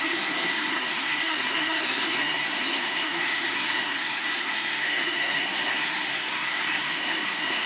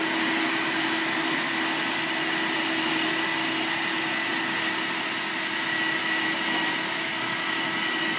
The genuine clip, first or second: second